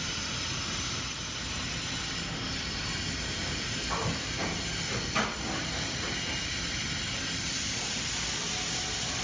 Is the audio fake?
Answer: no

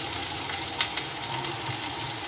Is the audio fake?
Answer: no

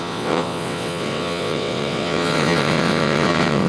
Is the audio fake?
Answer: yes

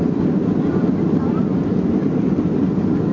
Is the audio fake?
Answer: no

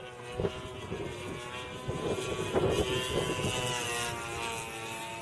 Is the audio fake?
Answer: no